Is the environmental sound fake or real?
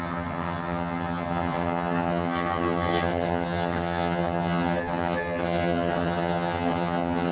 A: fake